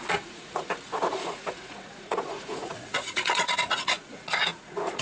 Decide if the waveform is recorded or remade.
remade